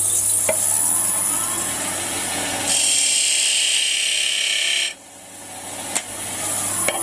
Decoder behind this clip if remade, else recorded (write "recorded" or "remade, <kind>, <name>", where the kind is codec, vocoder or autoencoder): recorded